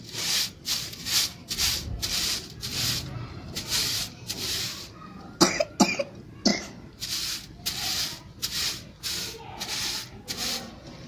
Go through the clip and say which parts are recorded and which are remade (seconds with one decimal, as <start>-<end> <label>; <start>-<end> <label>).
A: 0.0-1.4 recorded; 1.4-5.5 remade; 5.5-11.1 recorded